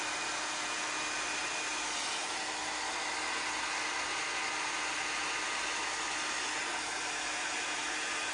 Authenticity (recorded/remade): recorded